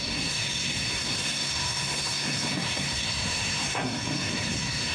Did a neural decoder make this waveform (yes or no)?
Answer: yes